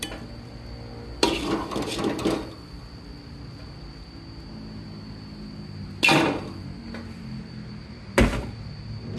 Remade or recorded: recorded